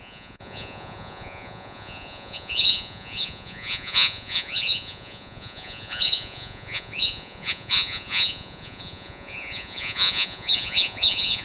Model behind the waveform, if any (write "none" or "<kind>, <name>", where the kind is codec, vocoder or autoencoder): vocoder, Vocos